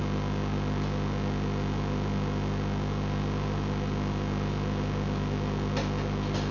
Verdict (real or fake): real